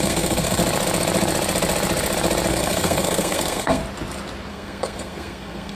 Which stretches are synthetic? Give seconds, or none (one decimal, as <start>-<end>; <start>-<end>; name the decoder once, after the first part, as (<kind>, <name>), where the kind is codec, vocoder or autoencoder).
0.0-0.6 (codec, SNAC); 2.5-3.8; 4.5-5.7